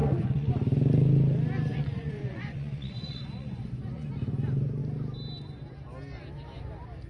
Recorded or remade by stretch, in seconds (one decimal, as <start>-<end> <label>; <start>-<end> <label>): 0.0-0.5 remade; 0.5-1.7 recorded; 1.7-4.1 remade; 4.1-7.1 recorded